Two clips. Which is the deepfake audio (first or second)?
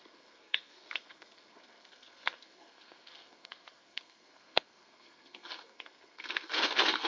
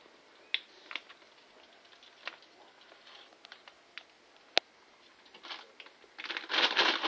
first